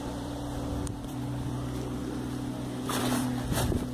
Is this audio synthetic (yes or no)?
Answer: yes